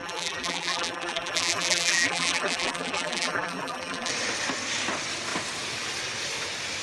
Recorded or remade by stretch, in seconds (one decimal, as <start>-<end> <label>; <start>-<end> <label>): 0.0-4.1 remade; 4.1-6.8 recorded